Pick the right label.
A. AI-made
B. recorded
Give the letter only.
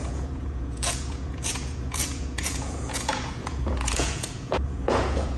A